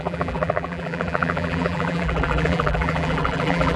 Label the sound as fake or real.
fake